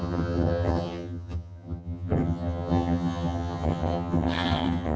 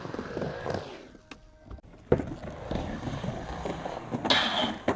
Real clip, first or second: second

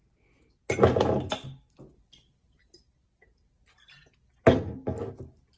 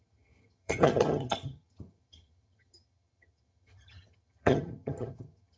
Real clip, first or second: first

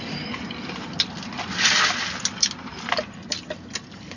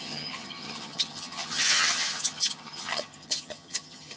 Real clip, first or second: first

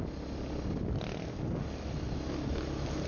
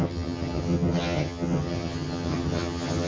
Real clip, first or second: first